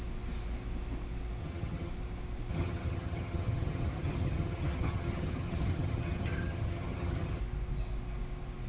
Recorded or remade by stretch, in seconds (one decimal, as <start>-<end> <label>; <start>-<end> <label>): 0.0-1.4 recorded; 1.4-1.9 remade; 1.9-2.5 recorded; 2.5-7.4 remade; 7.4-8.7 recorded